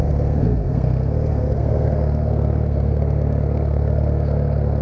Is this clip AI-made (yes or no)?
yes